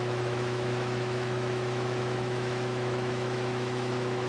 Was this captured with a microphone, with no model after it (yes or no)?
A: no